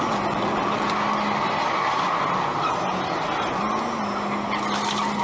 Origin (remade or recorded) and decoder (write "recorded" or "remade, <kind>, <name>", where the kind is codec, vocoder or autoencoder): recorded